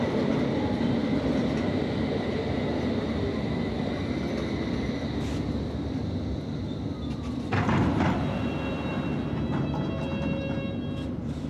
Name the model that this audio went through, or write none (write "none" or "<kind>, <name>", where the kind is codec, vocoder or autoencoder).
none